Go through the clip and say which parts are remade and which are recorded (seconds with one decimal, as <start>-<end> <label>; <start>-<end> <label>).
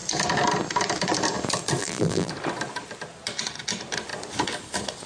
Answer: 0.0-1.8 recorded; 1.8-2.3 remade; 2.3-5.1 recorded